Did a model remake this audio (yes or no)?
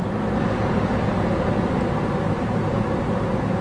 no